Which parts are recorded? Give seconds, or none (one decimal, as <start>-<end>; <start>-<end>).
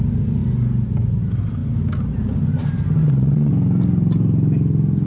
0.0-3.0; 3.5-5.1